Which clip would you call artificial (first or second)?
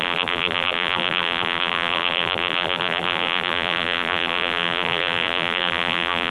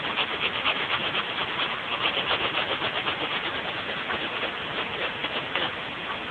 first